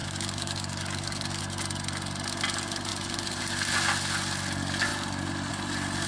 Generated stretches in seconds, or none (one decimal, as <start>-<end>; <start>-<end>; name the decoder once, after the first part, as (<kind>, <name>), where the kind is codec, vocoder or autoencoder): 0.0-1.4 (codec, DAC)